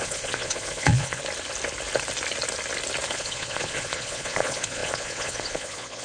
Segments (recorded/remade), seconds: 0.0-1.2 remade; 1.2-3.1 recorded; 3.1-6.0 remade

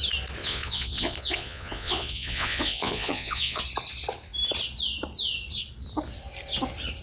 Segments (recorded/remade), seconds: 0.0-0.4 recorded; 0.4-3.6 remade; 3.6-7.0 recorded

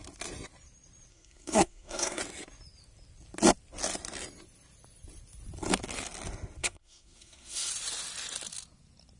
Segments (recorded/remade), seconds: 0.0-1.1 recorded; 1.1-2.2 remade; 2.2-6.6 recorded; 6.6-7.7 remade; 7.7-9.2 recorded

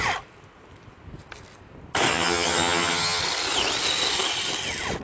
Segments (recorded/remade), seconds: 0.0-2.1 recorded; 2.1-3.2 remade; 3.2-5.0 recorded

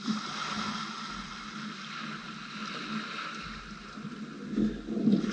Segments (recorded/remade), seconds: 0.0-5.3 recorded

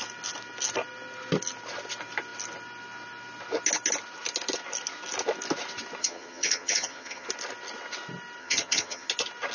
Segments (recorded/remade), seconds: 0.0-6.0 recorded; 6.0-7.3 remade; 7.3-8.4 recorded; 8.4-9.1 remade; 9.1-9.5 recorded